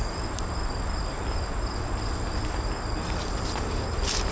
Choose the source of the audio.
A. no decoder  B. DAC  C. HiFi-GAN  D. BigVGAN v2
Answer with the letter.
A